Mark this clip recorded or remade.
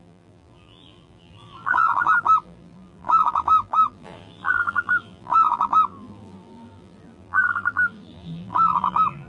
remade